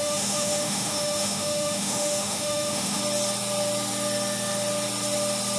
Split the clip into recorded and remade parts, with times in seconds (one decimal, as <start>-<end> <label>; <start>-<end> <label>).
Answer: 0.0-3.0 remade; 3.0-5.6 recorded